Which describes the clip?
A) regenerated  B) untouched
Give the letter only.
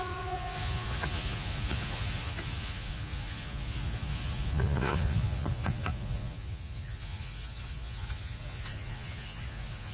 A